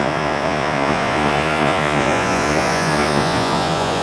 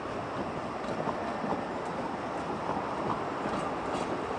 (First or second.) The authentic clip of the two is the second